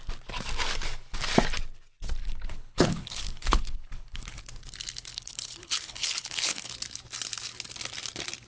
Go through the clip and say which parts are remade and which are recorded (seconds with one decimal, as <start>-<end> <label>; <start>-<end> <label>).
0.0-2.2 recorded; 2.2-4.4 remade; 4.4-5.1 recorded; 5.1-6.7 remade; 6.7-8.5 recorded